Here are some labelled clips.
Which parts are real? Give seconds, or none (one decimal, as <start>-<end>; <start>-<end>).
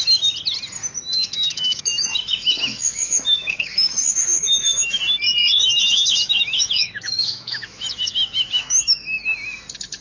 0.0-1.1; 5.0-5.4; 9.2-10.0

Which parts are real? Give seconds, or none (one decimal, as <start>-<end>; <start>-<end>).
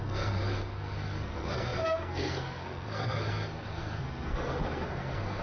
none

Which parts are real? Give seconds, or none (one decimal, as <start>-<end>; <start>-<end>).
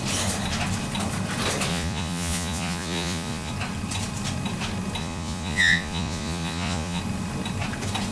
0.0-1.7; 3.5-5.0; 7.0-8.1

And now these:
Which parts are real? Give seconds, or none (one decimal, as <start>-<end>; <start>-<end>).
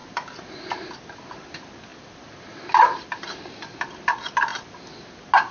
0.0-5.5